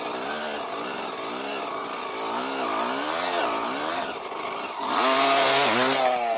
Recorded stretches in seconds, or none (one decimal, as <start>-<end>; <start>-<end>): 0.0-6.4